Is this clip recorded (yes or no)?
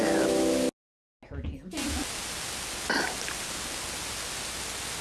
yes